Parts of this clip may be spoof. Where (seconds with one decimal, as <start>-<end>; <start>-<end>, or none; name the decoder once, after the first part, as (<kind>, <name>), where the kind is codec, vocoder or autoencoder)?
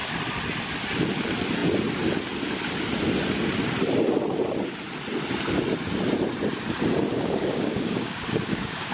7.1-8.9 (codec, DAC)